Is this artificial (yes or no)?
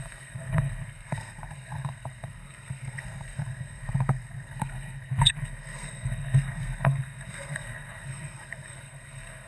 yes